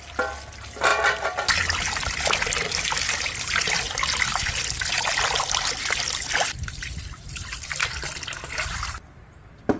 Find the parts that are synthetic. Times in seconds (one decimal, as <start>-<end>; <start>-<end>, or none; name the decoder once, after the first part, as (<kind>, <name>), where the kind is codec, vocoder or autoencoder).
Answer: none